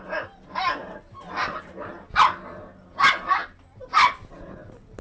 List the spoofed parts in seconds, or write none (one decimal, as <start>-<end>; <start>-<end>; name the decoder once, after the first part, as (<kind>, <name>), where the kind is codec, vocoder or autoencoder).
0.8-1.9 (vocoder, BigVGAN v2)